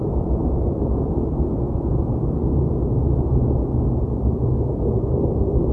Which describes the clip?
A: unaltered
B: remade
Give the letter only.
A